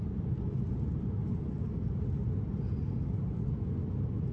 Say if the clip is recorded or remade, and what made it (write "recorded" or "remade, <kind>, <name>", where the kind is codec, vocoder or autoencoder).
recorded